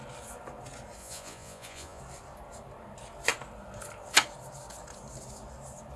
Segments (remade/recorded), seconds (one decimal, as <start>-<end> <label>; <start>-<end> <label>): 0.0-1.0 recorded; 1.0-2.0 remade; 2.0-6.0 recorded